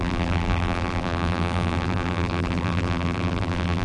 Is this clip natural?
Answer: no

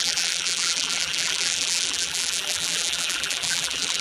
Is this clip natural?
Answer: no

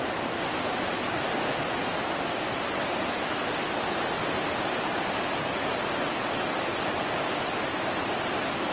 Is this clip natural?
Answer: yes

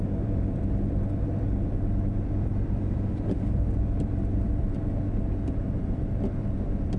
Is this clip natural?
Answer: no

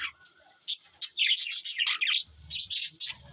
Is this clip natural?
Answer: yes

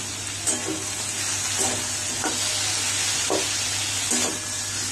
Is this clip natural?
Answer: yes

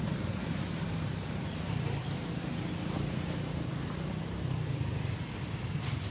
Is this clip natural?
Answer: no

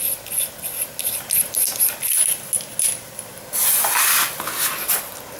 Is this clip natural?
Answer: yes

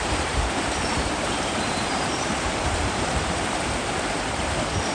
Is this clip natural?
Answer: no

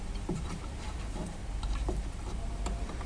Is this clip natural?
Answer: no